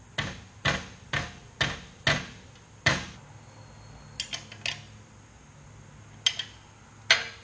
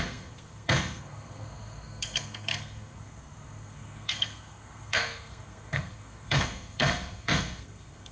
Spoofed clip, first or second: second